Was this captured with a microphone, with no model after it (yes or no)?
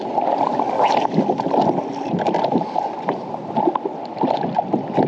yes